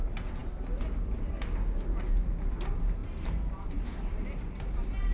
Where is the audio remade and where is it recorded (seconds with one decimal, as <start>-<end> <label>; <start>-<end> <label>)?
0.0-5.1 recorded